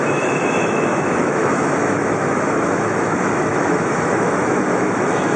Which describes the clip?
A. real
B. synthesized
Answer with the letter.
B